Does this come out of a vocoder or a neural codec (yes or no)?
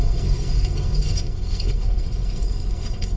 yes